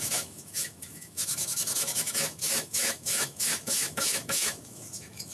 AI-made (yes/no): yes